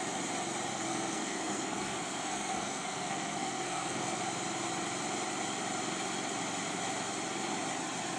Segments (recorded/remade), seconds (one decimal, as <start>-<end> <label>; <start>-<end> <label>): 0.0-0.7 recorded; 0.7-4.2 remade; 4.2-8.2 recorded